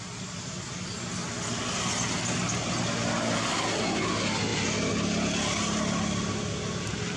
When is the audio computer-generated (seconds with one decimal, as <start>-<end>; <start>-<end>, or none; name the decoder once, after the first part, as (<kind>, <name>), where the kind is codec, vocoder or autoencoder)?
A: none